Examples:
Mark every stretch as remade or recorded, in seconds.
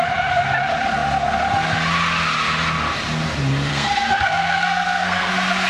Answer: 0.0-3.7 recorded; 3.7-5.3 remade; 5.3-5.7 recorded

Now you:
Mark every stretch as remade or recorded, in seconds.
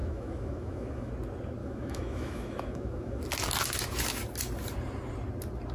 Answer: 0.0-1.1 remade; 1.1-1.6 recorded; 1.6-3.2 remade; 3.2-5.7 recorded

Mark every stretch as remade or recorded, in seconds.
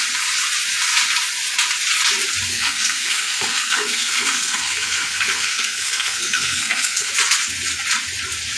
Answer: 0.0-2.5 recorded; 2.5-7.1 remade; 7.1-8.6 recorded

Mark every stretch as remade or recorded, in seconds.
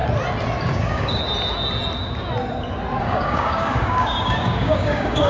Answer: 0.0-0.7 recorded; 0.7-1.2 remade; 1.2-3.0 recorded; 3.0-5.3 remade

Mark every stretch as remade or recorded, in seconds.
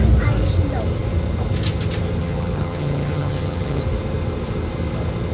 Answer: 0.0-2.2 recorded; 2.2-3.8 remade; 3.8-5.3 recorded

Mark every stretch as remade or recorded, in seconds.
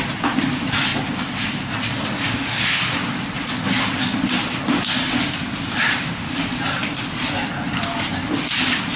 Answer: 0.0-2.2 recorded; 2.2-2.8 remade; 2.8-5.9 recorded; 5.9-6.4 remade; 6.4-9.0 recorded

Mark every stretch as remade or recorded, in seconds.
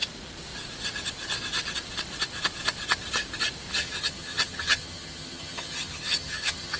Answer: 0.0-3.7 recorded; 3.7-6.8 remade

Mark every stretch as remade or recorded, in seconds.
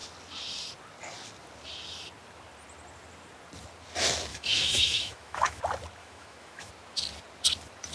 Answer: 0.0-4.3 recorded; 4.3-5.6 remade; 5.6-6.0 recorded; 6.0-6.7 remade; 6.7-7.9 recorded